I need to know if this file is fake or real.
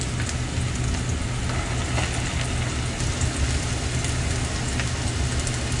real